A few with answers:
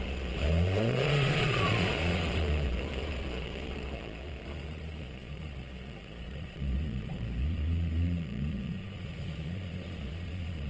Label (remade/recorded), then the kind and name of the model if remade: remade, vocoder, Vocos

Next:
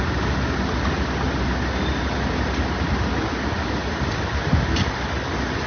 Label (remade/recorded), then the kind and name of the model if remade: recorded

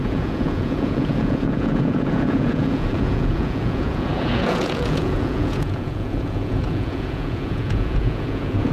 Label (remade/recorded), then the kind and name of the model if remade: remade, vocoder, Vocos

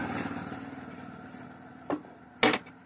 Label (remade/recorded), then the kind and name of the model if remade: recorded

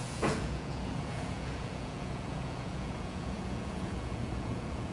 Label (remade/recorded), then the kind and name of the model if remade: remade, vocoder, Vocos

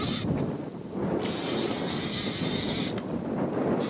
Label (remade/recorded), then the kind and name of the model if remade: recorded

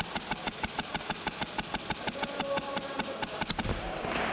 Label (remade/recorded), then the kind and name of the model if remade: recorded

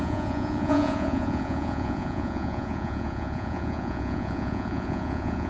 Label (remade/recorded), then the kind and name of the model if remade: remade, vocoder, Vocos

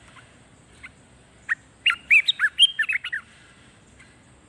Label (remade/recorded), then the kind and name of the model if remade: recorded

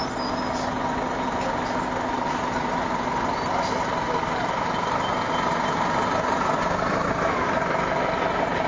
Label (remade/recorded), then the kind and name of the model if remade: recorded